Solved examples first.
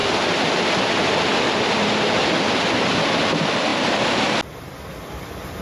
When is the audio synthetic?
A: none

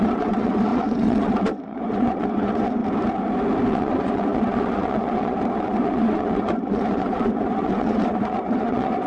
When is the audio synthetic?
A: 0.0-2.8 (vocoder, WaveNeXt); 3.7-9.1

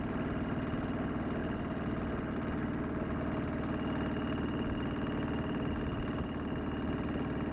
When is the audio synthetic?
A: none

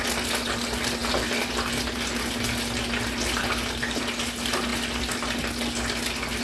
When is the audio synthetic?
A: none

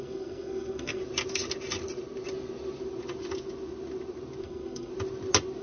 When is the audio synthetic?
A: 0.0-1.0 (codec, SNAC); 4.4-4.9

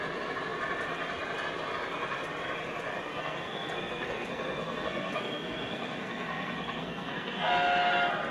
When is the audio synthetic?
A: 3.1-7.5 (codec, SNAC)